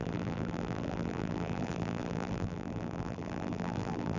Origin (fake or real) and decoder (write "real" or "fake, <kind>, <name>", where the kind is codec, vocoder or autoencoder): fake, vocoder, BigVGAN v2